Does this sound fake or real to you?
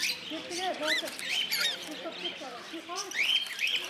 fake